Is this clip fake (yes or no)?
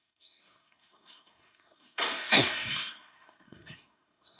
yes